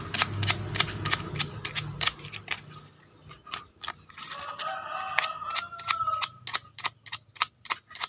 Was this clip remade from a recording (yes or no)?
no